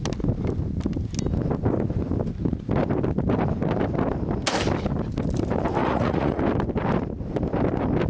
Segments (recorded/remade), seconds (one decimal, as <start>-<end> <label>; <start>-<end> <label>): 0.0-5.8 recorded; 5.8-6.4 remade; 6.4-8.1 recorded